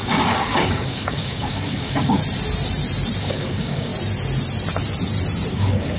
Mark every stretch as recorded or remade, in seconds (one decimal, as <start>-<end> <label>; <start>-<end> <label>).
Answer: 0.0-2.2 remade; 2.2-3.2 recorded; 3.2-3.9 remade; 3.9-5.5 recorded; 5.5-6.0 remade